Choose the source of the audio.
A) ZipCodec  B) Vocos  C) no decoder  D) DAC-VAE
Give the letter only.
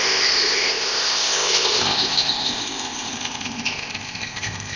A